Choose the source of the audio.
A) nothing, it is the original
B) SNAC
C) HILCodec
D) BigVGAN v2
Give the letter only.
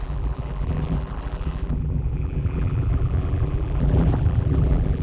D